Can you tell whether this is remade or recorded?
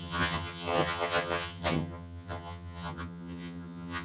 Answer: remade